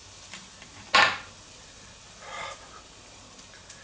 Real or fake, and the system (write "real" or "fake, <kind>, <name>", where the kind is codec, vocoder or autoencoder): real